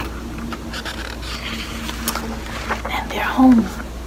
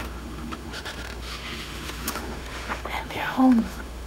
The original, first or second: first